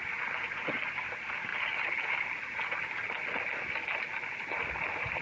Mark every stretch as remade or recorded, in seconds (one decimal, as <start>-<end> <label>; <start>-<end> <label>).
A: 0.0-5.2 recorded